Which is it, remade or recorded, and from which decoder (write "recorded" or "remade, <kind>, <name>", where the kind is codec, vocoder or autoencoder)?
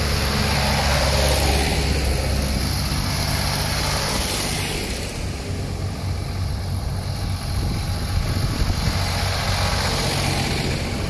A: recorded